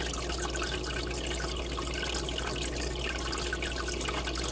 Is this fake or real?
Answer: real